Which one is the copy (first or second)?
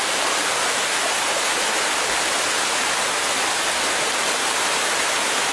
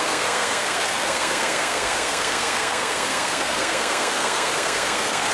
second